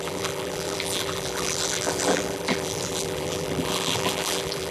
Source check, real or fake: fake